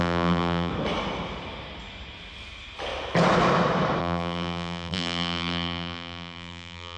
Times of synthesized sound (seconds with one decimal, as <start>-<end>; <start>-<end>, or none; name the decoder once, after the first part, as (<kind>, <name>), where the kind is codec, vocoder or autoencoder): 0.0-0.7 (vocoder, BigVGAN v2); 4.0-7.0